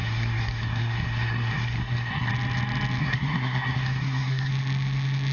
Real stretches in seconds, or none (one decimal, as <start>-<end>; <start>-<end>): 2.3-3.0; 4.5-5.3

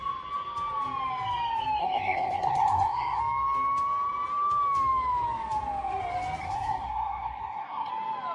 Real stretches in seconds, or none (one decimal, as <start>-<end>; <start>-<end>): 0.0-1.8; 3.2-6.4; 7.9-8.3

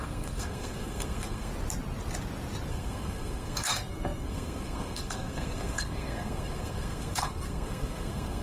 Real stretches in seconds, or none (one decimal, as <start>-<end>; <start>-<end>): 1.5-2.7

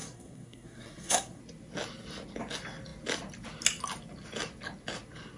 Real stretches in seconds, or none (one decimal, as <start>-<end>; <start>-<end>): 1.4-5.4

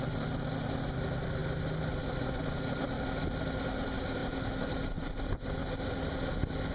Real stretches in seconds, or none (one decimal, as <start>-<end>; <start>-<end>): 0.0-6.7

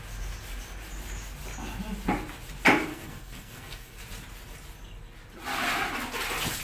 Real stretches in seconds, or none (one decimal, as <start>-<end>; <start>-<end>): 0.0-2.9; 4.0-6.6

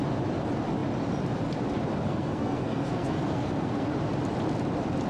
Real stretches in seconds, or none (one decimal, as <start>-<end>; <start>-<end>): 0.0-2.0; 3.9-5.1

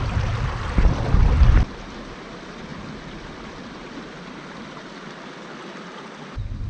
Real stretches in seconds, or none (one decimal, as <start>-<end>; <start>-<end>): 0.0-6.7